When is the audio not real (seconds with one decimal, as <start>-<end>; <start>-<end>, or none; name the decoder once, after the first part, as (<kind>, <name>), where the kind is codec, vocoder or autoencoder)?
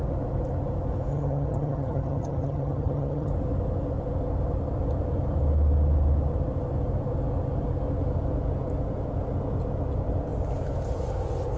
1.1-3.3 (vocoder, HiFi-GAN)